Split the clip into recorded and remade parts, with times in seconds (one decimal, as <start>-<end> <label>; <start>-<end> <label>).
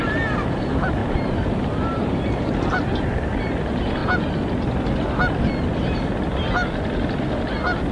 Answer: 0.0-4.0 remade; 4.0-7.9 recorded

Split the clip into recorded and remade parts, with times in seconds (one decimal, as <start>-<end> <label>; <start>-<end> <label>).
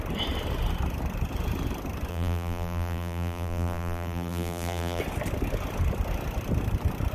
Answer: 0.0-2.1 recorded; 2.1-5.0 remade; 5.0-7.1 recorded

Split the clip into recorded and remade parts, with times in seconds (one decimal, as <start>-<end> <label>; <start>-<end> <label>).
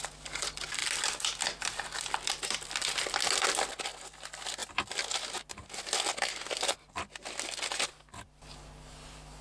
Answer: 0.0-9.4 recorded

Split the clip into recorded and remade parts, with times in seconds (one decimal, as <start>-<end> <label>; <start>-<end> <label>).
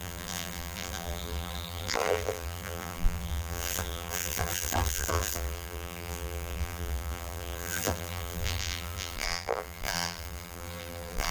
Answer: 0.0-11.3 remade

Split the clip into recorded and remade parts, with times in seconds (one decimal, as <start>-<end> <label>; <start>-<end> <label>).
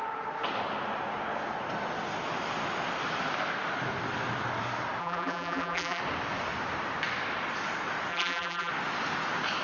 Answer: 0.0-5.0 recorded; 5.0-6.0 remade; 6.0-8.1 recorded; 8.1-8.7 remade; 8.7-9.6 recorded